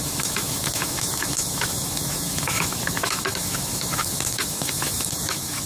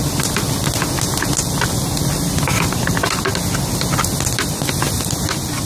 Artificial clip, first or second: first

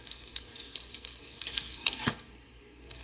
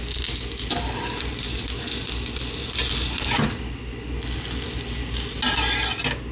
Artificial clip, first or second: first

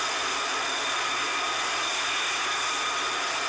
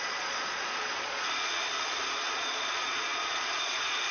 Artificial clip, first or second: second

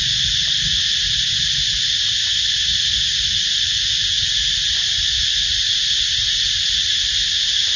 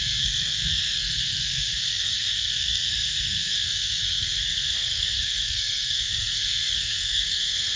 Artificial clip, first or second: second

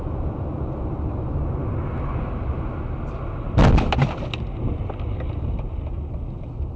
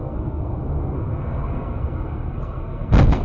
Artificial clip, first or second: second